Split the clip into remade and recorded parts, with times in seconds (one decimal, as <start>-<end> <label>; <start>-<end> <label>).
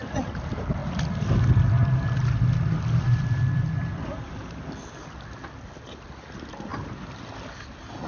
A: 0.0-8.1 recorded